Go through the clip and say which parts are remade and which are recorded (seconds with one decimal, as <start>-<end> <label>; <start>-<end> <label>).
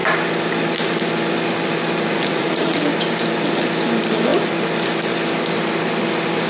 0.0-2.3 recorded; 2.3-2.8 remade; 2.8-6.5 recorded